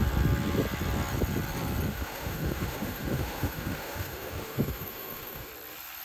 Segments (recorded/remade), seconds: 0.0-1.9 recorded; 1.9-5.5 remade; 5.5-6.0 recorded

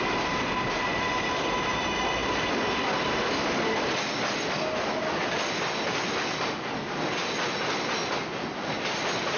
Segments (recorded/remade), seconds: 0.0-9.4 recorded